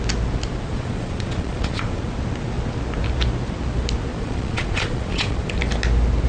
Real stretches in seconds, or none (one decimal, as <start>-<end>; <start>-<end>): 0.0-0.7; 2.0-4.1; 5.6-6.3